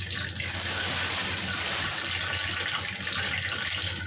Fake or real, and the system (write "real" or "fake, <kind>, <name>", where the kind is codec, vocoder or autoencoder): real